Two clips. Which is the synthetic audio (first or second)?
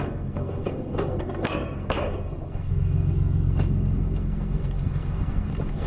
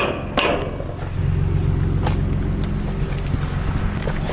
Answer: first